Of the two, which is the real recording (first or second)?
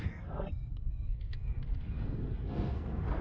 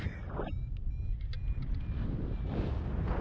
second